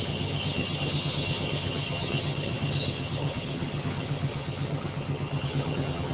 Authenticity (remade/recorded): remade